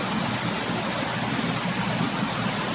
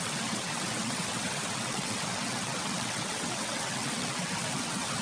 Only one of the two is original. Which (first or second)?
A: first